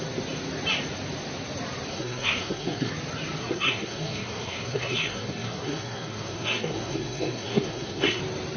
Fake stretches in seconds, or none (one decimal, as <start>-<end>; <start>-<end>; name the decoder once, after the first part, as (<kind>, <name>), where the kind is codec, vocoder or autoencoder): 1.9-2.9 (codec, SNAC); 3.4-8.2